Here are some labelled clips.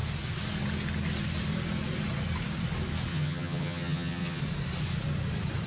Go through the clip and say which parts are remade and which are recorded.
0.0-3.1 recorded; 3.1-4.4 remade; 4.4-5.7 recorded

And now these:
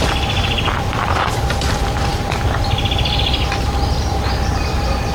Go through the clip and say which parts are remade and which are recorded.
0.0-5.1 recorded

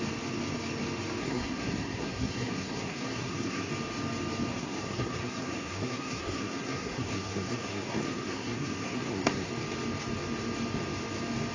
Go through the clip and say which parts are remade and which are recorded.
0.0-1.2 recorded; 1.2-3.7 remade; 3.7-4.5 recorded; 4.5-9.5 remade; 9.5-11.5 recorded